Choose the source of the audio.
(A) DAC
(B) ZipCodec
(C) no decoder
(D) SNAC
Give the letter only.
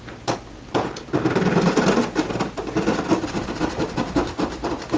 C